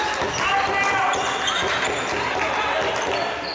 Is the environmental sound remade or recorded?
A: recorded